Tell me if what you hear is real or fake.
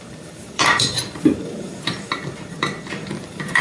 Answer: fake